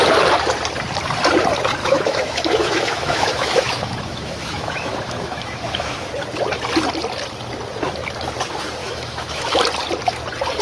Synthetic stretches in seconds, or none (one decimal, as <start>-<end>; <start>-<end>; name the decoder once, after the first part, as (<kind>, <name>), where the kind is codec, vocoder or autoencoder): 1.8-6.1 (autoencoder, DAC-VAE); 8.8-9.6